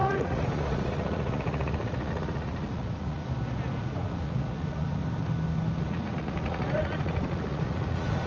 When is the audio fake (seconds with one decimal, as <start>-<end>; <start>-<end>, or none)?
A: 0.0-3.2; 3.8-5.0; 5.8-8.3